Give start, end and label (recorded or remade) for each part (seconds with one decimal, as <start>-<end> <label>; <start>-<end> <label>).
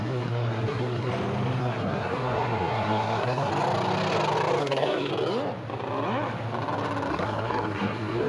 0.0-1.1 remade; 1.1-1.6 recorded; 1.6-3.5 remade; 3.5-4.6 recorded; 4.6-5.1 remade; 5.1-7.1 recorded; 7.1-8.3 remade